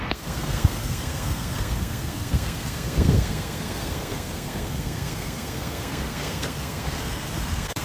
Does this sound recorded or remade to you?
remade